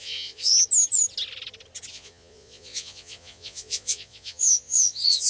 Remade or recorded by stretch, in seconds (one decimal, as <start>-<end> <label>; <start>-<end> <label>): 0.0-0.5 remade; 0.5-1.9 recorded; 1.9-5.3 remade